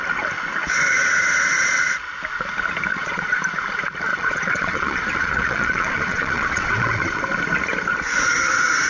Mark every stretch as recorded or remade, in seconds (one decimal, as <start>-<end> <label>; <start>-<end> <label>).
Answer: 0.0-2.9 recorded; 2.9-3.4 remade; 3.4-4.1 recorded; 4.1-7.2 remade; 7.2-8.9 recorded